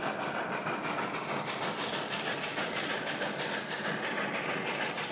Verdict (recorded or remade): recorded